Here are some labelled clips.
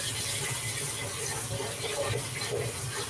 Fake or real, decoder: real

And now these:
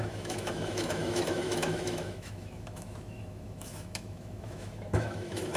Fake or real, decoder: fake, autoencoder, DAC-VAE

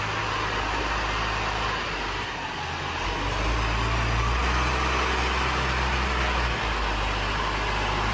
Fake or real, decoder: real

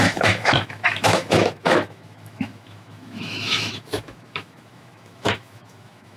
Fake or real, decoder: fake, autoencoder, DAC-VAE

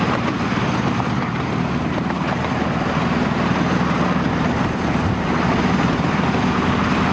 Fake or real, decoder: real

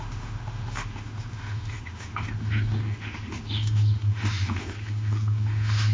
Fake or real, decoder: fake, autoencoder, DAC-VAE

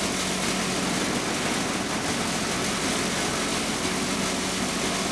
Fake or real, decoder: real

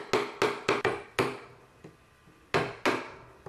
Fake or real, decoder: real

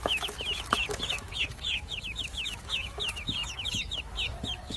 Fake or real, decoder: fake, autoencoder, DAC-VAE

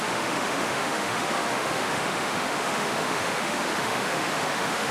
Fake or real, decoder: fake, autoencoder, DAC-VAE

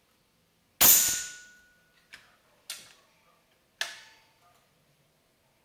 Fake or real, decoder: real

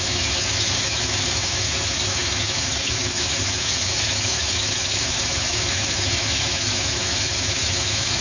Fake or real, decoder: fake, autoencoder, DAC-VAE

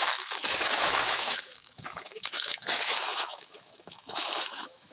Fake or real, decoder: fake, autoencoder, DAC-VAE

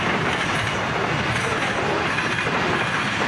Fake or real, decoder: real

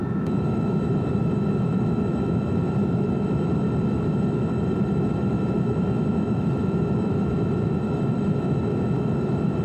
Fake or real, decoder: fake, autoencoder, DAC-VAE